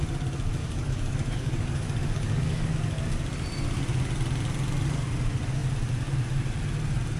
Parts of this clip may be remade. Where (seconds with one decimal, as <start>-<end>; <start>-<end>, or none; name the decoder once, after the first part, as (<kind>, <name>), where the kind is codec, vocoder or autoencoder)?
0.6-2.7 (codec, DAC)